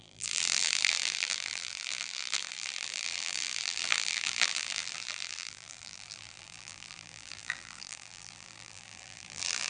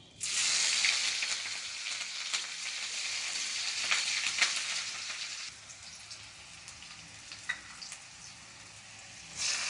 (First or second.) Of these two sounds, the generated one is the first